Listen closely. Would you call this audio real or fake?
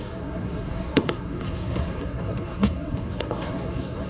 fake